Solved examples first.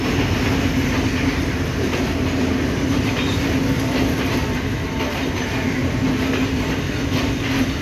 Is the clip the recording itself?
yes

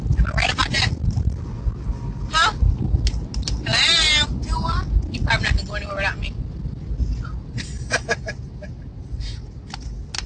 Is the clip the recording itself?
yes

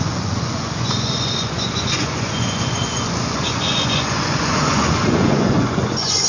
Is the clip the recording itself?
no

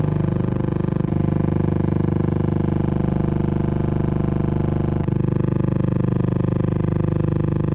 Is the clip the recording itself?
yes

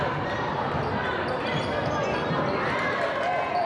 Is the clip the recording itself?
yes